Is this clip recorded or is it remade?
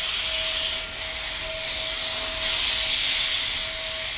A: recorded